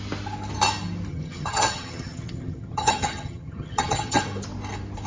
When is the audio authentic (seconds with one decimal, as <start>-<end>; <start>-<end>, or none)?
0.0-1.1; 4.2-5.1